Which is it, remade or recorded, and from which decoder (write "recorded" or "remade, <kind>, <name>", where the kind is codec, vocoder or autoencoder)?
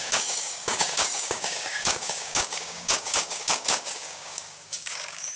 remade, codec, DAC